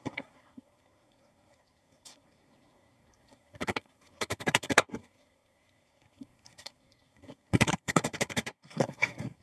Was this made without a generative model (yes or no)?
no